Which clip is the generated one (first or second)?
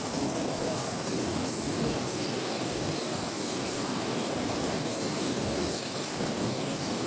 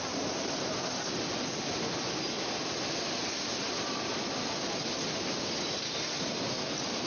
first